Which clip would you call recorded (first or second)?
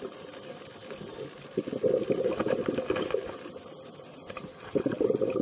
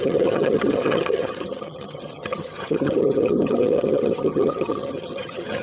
first